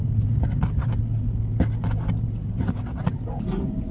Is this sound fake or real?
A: real